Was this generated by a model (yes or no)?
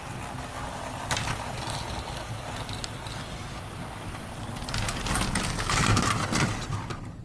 no